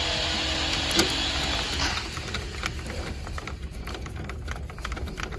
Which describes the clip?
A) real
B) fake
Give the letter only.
A